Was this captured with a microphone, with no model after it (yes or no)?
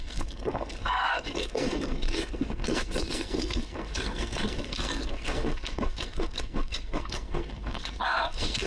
no